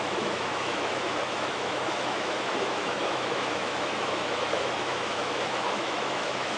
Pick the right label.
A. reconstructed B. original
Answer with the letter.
A